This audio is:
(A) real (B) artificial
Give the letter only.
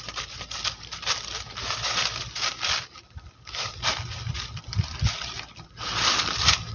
B